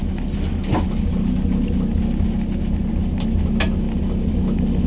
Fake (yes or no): no